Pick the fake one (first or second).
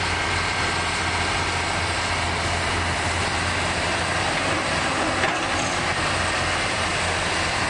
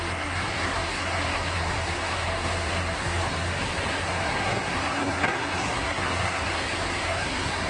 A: second